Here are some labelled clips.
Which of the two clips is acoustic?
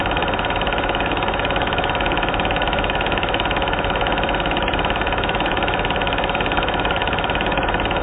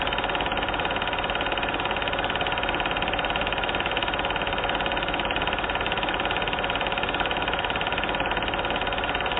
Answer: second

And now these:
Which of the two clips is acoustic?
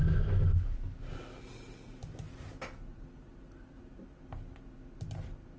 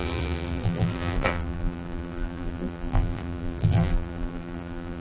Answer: first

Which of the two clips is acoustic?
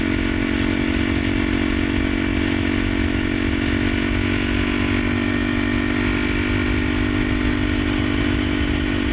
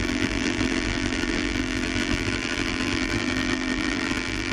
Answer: first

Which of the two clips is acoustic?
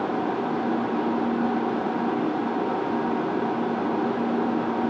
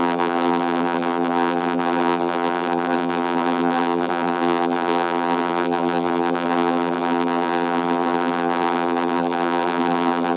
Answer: first